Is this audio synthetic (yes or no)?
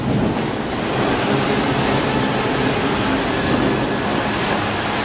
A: yes